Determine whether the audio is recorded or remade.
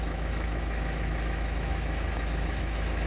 remade